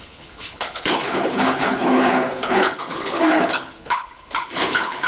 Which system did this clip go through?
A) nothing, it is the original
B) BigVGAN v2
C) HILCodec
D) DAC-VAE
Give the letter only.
C